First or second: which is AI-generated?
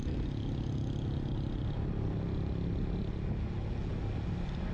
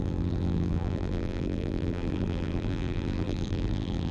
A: second